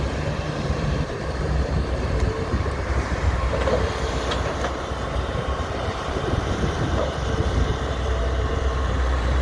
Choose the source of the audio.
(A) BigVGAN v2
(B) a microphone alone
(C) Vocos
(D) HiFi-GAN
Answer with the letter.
A